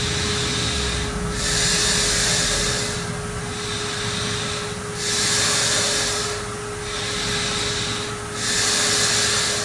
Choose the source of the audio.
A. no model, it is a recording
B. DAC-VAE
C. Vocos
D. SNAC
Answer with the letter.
A